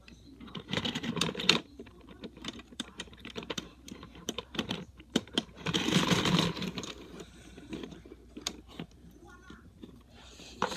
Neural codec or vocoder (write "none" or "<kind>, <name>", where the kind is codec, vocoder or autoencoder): vocoder, BigVGAN v2